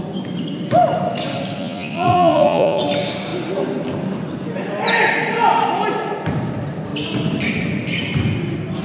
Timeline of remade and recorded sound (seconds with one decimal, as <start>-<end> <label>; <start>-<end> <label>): 0.0-1.6 recorded; 1.6-2.8 remade; 2.8-8.8 recorded